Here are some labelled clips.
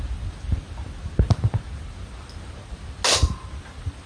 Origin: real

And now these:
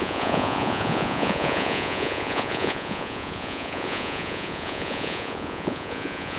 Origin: fake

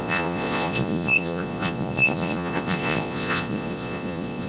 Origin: fake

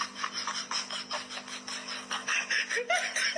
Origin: real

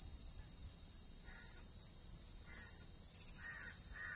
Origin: real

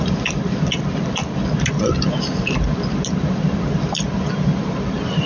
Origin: real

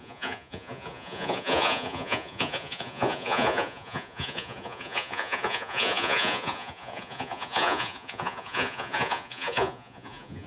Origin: fake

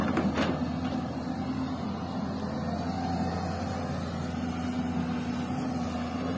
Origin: real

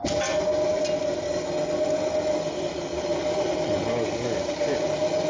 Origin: real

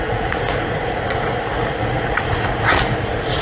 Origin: fake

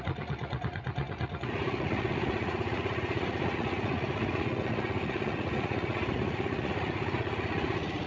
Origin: fake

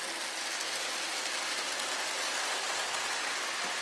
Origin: real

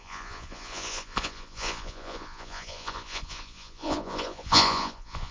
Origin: fake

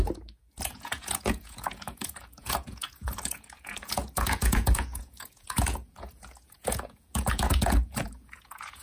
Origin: fake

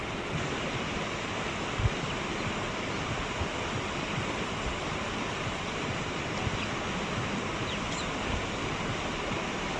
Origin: real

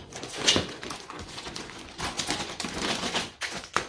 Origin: fake